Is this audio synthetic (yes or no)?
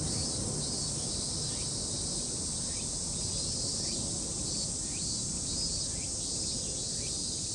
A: no